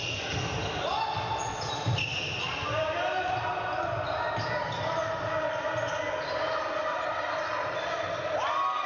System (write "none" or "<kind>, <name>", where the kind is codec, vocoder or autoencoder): none